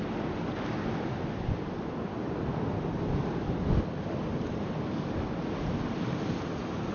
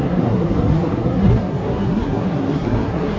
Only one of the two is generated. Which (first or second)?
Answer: second